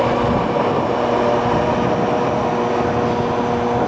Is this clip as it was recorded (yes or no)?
yes